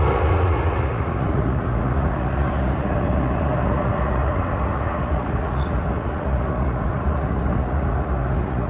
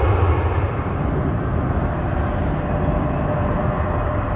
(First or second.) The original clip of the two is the second